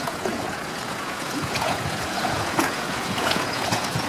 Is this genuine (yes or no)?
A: no